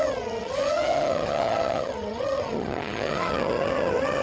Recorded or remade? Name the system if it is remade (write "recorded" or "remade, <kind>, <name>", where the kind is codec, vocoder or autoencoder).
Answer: remade, vocoder, HiFi-GAN